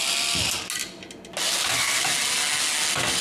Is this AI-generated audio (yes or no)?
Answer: no